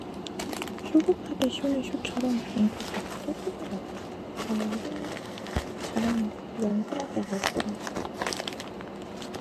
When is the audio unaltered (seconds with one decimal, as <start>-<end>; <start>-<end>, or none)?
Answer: 0.0-4.9; 5.6-6.7; 7.6-9.4

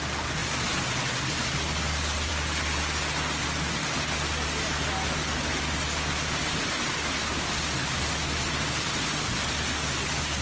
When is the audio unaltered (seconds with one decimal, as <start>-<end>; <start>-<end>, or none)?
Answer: 0.0-10.4

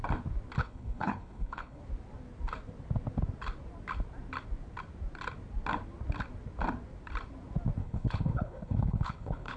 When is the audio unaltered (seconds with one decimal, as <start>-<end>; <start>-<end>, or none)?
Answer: 0.0-0.6; 1.8-7.8

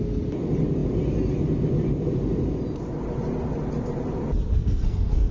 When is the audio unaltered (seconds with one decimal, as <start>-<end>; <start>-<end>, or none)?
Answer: 0.0-4.5

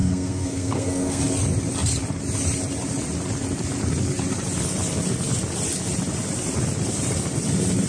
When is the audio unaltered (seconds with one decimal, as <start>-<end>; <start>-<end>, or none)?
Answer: 1.2-7.9